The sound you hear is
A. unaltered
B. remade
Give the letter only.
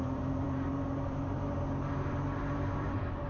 B